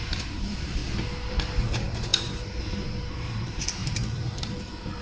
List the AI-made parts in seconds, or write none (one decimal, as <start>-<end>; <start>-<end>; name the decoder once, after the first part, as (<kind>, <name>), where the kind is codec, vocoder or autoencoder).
0.0-0.8 (vocoder, BigVGAN v2); 1.3-5.0